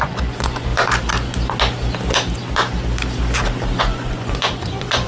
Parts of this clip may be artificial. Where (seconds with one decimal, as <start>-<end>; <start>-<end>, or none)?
0.0-0.7; 3.8-5.1